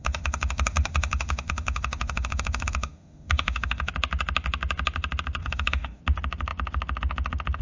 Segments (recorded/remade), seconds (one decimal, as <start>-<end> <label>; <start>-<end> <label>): 0.0-3.9 remade; 3.9-5.4 recorded; 5.4-6.0 remade; 6.0-7.6 recorded